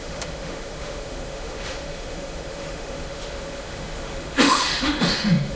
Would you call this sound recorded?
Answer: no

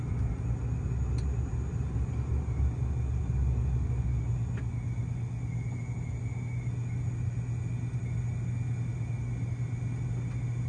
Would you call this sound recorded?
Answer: yes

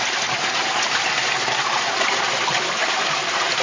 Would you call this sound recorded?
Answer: yes